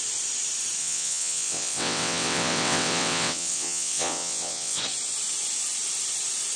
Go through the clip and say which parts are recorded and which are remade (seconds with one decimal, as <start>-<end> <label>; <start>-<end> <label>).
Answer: 0.0-0.8 recorded; 0.8-4.8 remade; 4.8-6.6 recorded